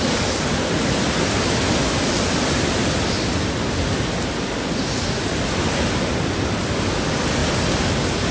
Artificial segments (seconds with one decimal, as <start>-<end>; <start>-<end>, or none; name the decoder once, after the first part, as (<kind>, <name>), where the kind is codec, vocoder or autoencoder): none

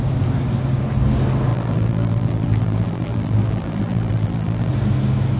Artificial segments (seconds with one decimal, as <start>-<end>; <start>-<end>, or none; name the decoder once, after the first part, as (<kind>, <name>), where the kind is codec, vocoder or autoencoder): 1.5-4.7 (vocoder, BigVGAN v2)

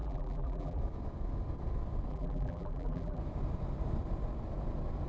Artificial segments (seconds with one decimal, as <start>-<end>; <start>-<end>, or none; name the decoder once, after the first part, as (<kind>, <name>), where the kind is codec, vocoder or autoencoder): 0.0-0.8 (vocoder, BigVGAN v2); 2.1-3.2